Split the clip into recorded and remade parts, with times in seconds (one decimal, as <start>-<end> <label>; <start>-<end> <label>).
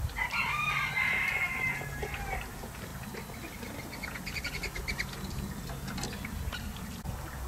0.0-7.5 recorded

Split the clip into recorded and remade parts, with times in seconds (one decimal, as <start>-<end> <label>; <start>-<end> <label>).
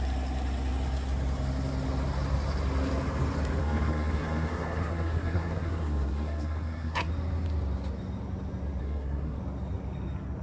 0.0-3.6 recorded; 3.6-7.1 remade; 7.1-8.8 recorded; 8.8-9.4 remade; 9.4-10.4 recorded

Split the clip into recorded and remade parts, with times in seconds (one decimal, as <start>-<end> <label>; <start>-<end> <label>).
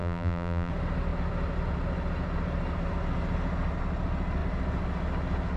0.0-0.7 remade; 0.7-5.6 recorded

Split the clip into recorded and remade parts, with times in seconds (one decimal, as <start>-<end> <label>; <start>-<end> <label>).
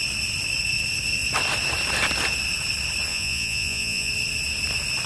0.0-3.1 recorded; 3.1-4.1 remade; 4.1-5.1 recorded